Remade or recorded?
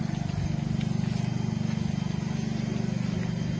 recorded